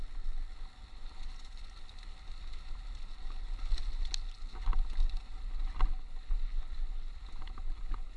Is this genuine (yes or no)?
yes